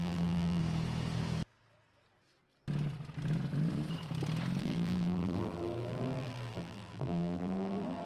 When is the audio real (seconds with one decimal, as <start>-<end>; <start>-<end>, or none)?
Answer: 0.6-4.6